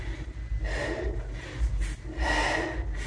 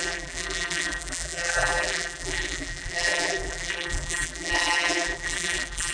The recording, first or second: first